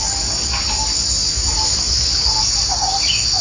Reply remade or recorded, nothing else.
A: recorded